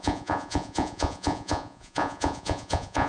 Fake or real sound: fake